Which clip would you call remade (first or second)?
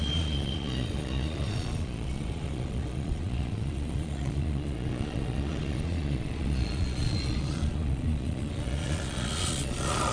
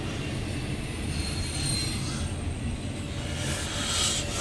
first